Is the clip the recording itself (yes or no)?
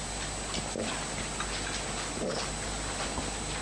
yes